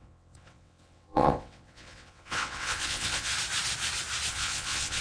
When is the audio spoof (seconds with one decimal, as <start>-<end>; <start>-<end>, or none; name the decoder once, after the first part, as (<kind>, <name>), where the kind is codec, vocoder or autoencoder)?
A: 0.0-3.3 (vocoder, WaveNeXt); 4.3-5.0